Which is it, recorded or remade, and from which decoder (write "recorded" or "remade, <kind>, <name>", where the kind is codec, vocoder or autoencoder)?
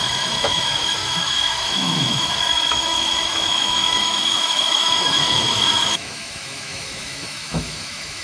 remade, autoencoder, DAC-VAE